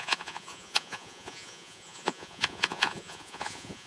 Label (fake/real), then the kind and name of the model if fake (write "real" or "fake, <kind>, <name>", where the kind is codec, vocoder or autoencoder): fake, vocoder, Vocos